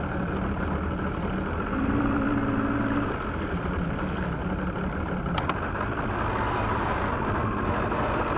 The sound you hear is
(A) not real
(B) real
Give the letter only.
B